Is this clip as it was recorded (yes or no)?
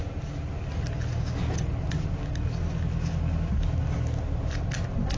yes